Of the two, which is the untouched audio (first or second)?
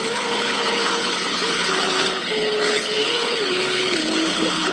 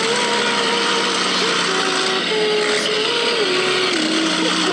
second